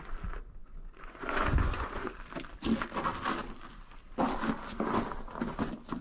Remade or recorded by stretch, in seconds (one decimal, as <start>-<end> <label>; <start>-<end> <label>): 0.0-0.6 recorded; 0.6-2.1 remade; 2.1-6.0 recorded